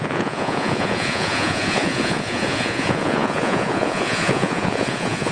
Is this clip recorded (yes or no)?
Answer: no